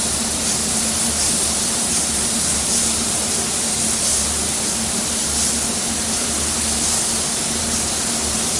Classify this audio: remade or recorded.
remade